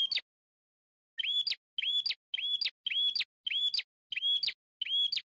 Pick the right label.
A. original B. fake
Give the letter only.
A